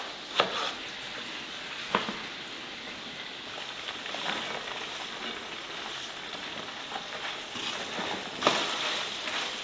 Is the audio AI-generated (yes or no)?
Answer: no